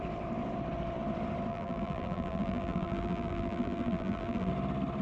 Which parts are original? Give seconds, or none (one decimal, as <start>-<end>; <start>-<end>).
0.0-1.5; 4.5-5.0